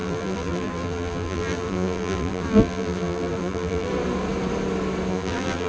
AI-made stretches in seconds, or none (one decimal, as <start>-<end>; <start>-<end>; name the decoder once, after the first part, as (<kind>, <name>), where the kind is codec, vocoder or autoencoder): 0.0-3.9 (vocoder, BigVGAN v2); 5.1-5.7